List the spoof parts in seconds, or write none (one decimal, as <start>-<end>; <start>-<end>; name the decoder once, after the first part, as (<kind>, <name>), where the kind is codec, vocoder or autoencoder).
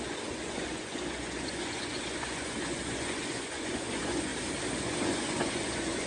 0.0-4.3 (vocoder, Vocos); 4.8-6.1